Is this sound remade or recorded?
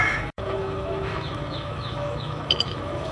remade